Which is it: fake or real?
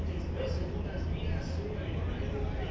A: real